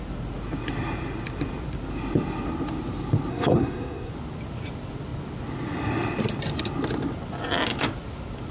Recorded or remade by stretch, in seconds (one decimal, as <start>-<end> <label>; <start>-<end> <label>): 0.0-3.3 recorded; 3.3-4.1 remade; 4.1-8.5 recorded